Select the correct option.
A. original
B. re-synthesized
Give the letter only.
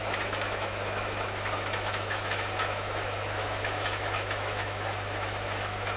B